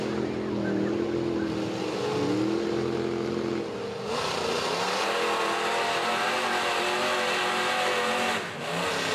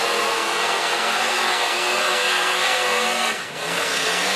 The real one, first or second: first